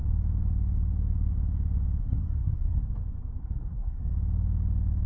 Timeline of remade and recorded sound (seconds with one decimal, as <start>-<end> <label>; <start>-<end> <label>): 0.0-2.0 recorded; 2.0-2.8 remade; 2.8-3.4 recorded; 3.4-4.0 remade; 4.0-5.1 recorded